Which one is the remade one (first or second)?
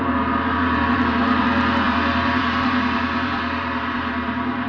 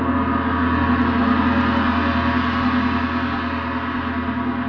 first